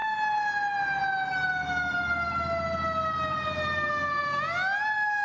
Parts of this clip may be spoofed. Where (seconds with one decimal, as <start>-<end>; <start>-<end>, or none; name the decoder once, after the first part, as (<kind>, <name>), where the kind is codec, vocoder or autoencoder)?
none